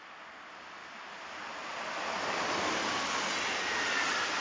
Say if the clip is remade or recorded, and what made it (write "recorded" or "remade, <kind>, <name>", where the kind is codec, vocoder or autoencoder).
recorded